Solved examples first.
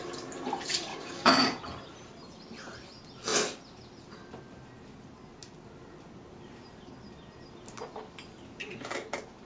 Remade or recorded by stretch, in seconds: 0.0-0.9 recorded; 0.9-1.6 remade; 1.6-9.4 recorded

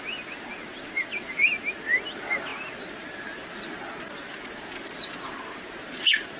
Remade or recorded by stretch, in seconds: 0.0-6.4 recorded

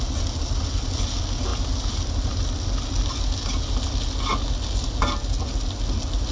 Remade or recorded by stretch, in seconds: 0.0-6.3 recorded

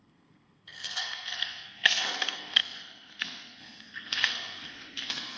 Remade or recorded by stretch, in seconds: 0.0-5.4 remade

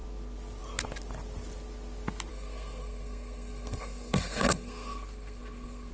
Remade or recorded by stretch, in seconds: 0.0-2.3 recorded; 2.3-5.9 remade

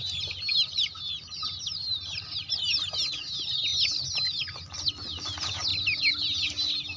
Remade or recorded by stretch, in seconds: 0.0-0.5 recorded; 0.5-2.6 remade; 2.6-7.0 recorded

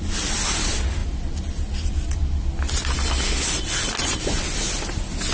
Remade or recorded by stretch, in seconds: 0.0-5.3 recorded

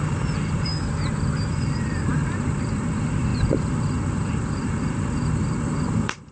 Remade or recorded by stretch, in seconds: 0.0-0.7 remade; 0.7-1.5 recorded; 1.5-6.3 remade